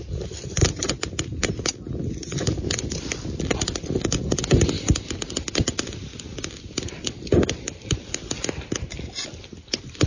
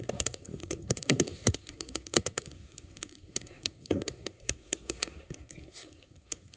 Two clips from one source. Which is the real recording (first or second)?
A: first